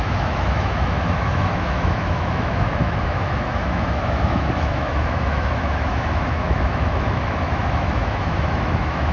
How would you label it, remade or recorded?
remade